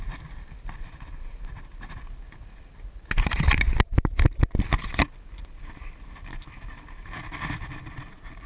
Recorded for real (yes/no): yes